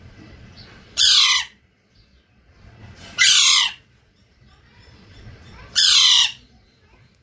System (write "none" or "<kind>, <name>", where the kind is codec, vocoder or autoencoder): vocoder, Vocos